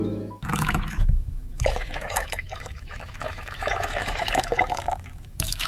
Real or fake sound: fake